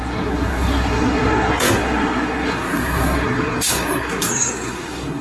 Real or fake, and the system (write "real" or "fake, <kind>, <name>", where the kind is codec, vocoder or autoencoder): fake, codec, SNAC